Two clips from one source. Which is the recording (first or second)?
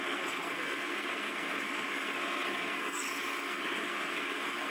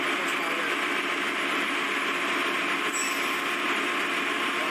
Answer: second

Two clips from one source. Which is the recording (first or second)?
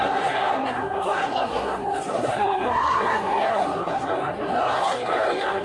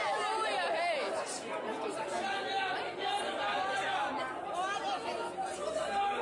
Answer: second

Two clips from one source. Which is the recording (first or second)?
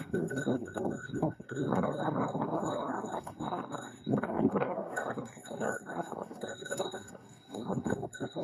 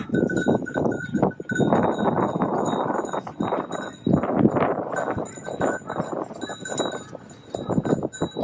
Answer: second